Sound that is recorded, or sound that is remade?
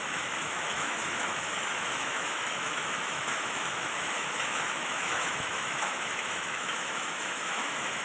remade